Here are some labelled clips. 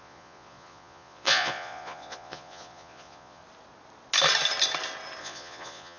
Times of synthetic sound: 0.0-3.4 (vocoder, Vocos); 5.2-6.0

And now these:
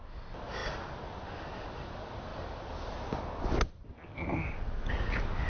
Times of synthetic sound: none